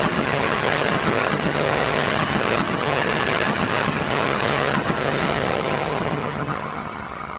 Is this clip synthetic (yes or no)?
yes